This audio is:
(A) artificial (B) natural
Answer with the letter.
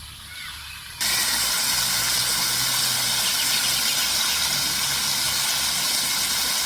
B